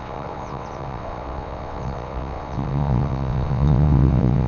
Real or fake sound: fake